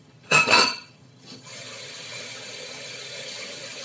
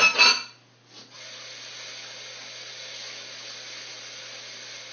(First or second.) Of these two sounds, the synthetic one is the first